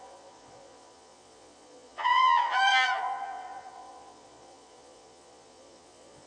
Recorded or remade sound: remade